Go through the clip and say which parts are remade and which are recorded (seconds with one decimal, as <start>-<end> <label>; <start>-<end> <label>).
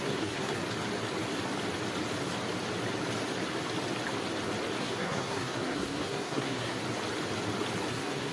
0.0-0.6 remade; 0.6-4.8 recorded; 4.8-6.8 remade; 6.8-7.9 recorded; 7.9-8.3 remade